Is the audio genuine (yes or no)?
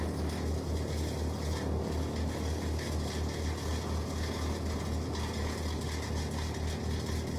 yes